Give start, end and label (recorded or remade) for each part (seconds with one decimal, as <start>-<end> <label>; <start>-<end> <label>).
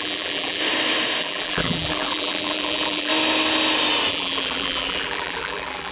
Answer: 0.0-0.6 remade; 0.6-1.2 recorded; 1.2-3.1 remade; 3.1-4.1 recorded; 4.1-5.9 remade